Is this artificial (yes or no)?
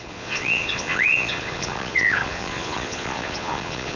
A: yes